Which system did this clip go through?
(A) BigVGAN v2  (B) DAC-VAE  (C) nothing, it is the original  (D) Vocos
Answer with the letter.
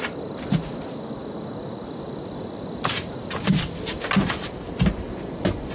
C